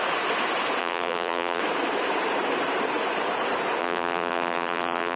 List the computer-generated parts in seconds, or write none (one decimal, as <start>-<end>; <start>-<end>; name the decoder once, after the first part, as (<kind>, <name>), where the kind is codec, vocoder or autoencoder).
0.8-1.6 (vocoder, BigVGAN v2); 3.8-5.2